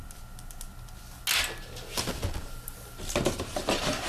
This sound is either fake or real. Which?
real